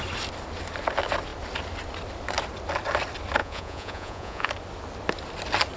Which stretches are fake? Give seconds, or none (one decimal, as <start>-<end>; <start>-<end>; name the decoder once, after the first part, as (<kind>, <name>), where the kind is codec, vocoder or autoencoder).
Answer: 3.4-4.5 (vocoder, Vocos)